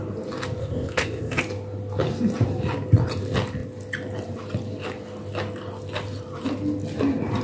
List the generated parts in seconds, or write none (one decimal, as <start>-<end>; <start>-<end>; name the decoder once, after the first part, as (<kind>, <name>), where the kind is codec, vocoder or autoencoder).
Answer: 0.6-1.4 (codec, ZipCodec)